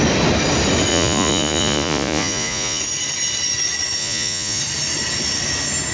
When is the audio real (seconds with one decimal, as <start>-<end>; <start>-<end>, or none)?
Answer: 0.0-0.9; 2.8-4.0; 4.6-5.9